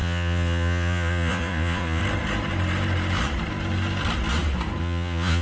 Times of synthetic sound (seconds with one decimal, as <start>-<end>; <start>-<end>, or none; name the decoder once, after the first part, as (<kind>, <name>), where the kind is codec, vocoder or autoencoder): 0.0-2.0 (vocoder, Vocos); 4.8-5.4